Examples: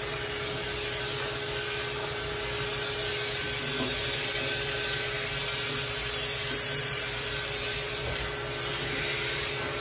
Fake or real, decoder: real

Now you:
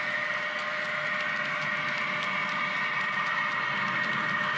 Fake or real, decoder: real